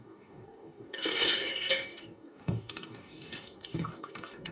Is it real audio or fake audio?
fake